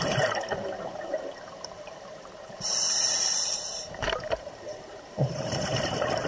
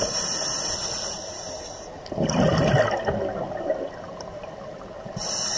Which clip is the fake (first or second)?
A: first